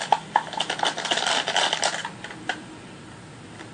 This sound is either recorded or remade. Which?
recorded